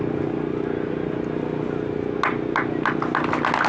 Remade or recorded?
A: recorded